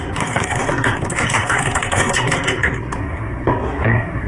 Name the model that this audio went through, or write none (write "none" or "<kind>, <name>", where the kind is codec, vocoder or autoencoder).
codec, SNAC